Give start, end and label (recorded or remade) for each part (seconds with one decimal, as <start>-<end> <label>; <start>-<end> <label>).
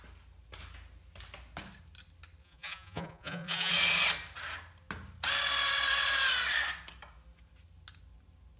0.0-2.4 recorded; 2.4-3.7 remade; 3.7-8.6 recorded